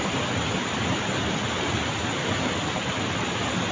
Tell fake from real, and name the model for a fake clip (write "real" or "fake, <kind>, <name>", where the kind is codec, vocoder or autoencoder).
real